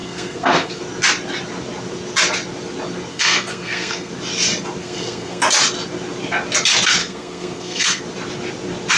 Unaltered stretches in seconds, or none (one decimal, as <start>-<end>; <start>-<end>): 0.8-3.1; 4.1-4.8; 5.4-7.0; 8.0-9.0